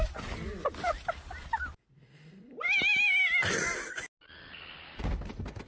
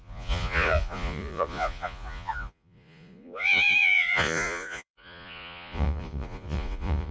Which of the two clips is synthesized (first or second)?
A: second